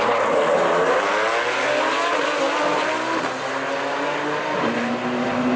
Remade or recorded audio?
recorded